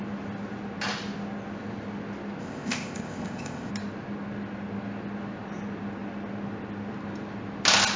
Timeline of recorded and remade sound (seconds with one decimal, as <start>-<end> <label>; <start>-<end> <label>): 0.0-2.4 recorded; 2.4-3.7 remade; 3.7-8.0 recorded